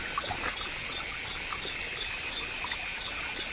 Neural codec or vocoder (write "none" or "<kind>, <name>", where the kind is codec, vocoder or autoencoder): none